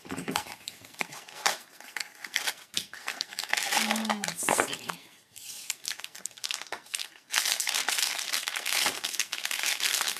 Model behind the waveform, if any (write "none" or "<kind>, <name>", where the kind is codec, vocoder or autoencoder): codec, SNAC